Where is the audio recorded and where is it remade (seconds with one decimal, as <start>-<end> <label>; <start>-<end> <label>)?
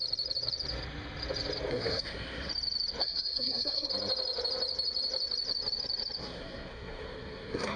0.0-1.7 recorded; 1.7-2.5 remade; 2.5-3.0 recorded; 3.0-3.9 remade; 3.9-6.2 recorded; 6.2-7.8 remade